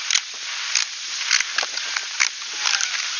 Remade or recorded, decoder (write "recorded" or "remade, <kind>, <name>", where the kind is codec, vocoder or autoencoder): recorded